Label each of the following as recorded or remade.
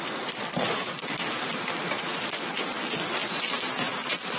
remade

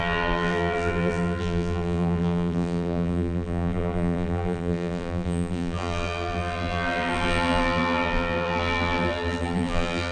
remade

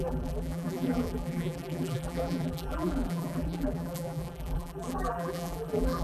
remade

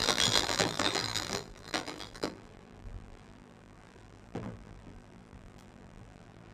remade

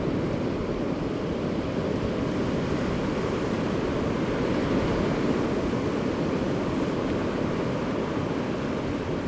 recorded